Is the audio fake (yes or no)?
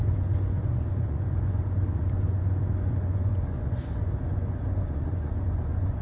yes